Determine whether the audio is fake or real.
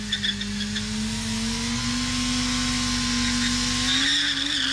real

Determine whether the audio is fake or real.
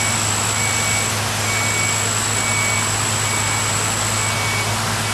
real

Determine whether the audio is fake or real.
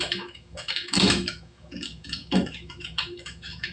fake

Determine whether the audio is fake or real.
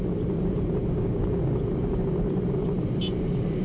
real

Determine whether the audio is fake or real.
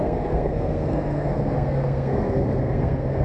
fake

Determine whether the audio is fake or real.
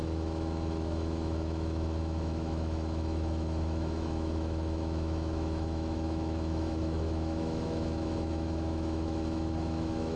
fake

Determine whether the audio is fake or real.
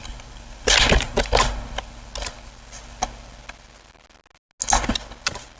real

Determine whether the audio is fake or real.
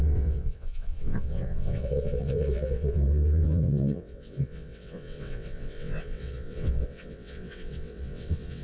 fake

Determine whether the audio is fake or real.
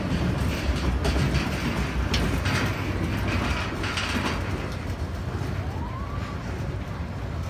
real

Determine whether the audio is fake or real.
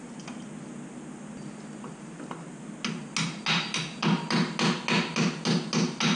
real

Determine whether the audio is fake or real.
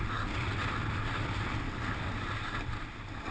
real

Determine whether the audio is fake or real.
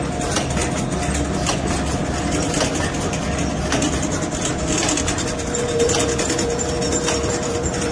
real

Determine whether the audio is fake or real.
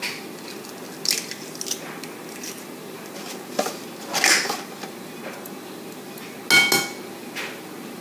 real